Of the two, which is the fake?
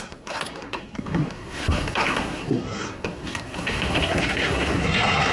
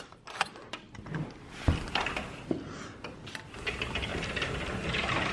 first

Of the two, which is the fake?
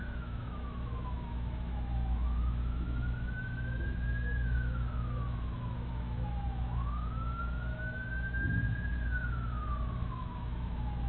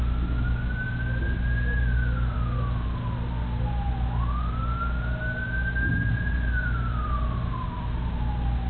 first